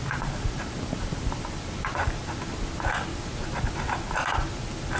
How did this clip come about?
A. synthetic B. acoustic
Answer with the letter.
B